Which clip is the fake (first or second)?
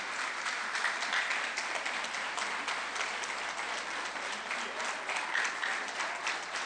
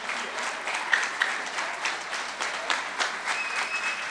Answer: second